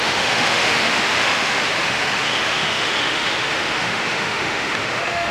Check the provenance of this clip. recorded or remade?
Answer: remade